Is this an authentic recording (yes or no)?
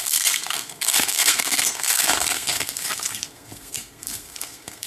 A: no